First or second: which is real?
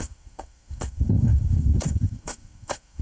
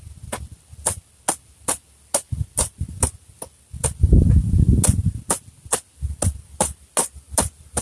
second